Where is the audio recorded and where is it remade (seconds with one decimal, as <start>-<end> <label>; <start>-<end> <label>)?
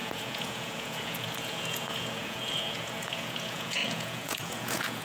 0.0-5.0 remade